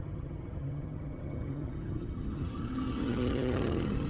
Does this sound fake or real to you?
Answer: fake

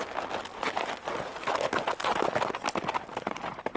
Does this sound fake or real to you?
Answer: real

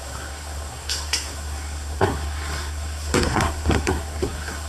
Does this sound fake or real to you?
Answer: fake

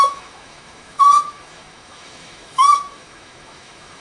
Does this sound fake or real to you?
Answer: fake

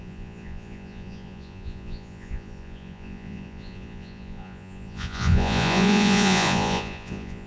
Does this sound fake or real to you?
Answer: fake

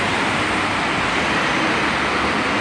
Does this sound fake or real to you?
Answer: real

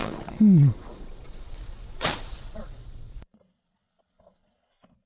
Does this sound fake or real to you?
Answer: fake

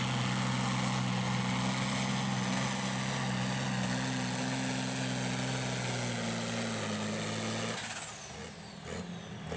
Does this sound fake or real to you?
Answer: real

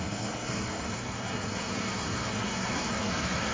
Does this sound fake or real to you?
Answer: fake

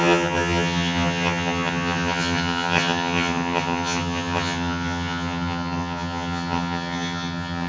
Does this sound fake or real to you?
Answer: fake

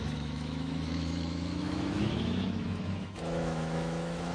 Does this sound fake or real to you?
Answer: fake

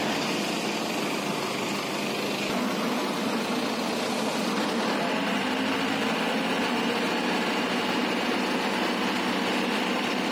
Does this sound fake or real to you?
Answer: real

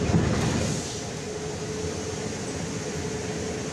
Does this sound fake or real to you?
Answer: real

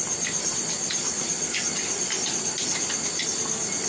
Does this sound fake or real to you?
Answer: real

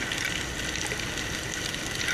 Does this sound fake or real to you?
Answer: real